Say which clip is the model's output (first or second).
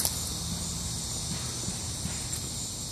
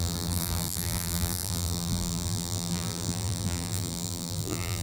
second